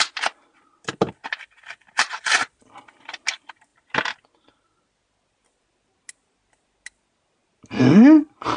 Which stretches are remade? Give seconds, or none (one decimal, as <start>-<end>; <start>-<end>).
none